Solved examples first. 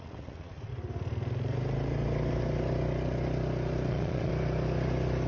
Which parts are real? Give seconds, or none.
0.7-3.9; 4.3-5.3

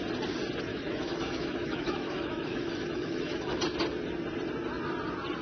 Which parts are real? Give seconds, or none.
0.0-0.7; 3.6-5.4

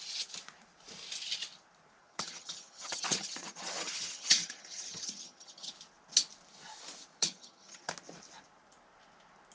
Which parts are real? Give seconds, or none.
0.0-2.0; 5.7-7.2; 7.9-9.5

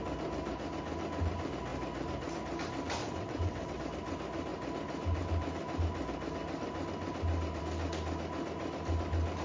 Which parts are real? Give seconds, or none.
0.0-3.0; 3.8-9.4

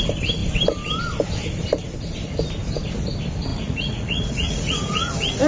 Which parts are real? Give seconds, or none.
0.0-3.5; 5.1-5.5